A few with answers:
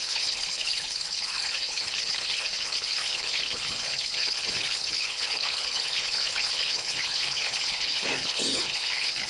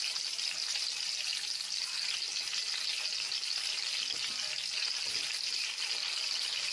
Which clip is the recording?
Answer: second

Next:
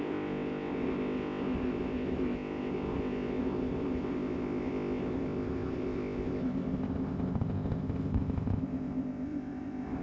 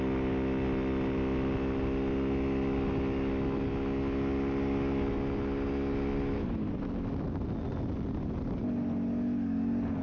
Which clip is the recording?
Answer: second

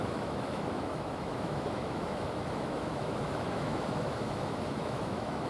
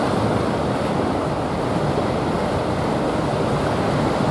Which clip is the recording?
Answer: second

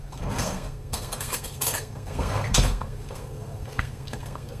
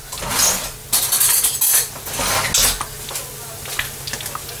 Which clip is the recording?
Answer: second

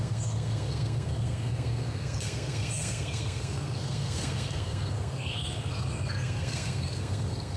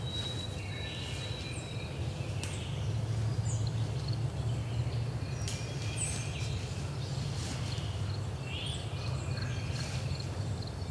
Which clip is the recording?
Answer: second